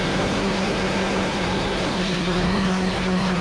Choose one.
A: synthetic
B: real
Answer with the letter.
A